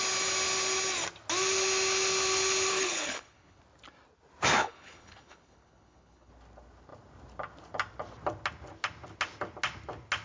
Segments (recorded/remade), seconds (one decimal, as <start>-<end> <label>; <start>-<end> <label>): 0.0-2.7 recorded; 2.7-3.6 remade; 3.6-4.6 recorded; 4.6-6.3 remade; 6.3-10.2 recorded